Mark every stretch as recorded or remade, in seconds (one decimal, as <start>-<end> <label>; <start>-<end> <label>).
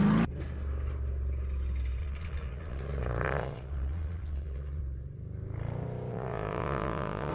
0.0-2.0 recorded; 2.0-4.8 remade; 4.8-6.1 recorded; 6.1-7.3 remade